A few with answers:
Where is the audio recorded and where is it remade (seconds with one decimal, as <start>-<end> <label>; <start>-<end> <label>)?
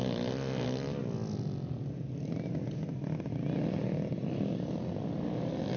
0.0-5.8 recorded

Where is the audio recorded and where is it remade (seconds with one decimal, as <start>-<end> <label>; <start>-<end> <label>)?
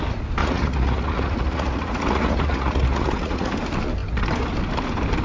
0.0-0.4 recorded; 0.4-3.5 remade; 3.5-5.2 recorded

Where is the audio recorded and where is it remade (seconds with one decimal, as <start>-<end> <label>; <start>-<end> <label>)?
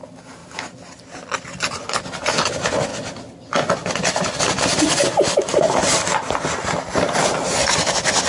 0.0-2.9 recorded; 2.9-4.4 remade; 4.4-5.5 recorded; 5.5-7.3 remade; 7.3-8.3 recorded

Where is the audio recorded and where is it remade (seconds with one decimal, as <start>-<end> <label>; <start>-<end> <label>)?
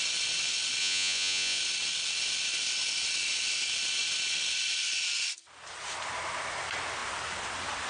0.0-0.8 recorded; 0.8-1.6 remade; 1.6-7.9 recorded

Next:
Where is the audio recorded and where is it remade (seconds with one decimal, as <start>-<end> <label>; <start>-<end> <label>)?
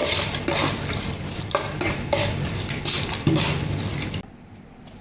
0.0-5.0 recorded